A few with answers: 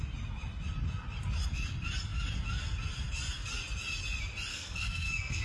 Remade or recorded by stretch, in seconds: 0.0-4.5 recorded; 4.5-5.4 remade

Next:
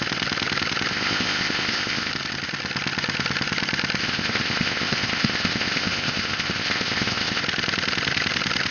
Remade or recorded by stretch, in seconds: 0.0-0.9 recorded; 0.9-2.1 remade; 2.1-4.0 recorded; 4.0-7.4 remade; 7.4-8.7 recorded